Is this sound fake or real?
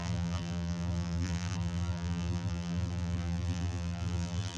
fake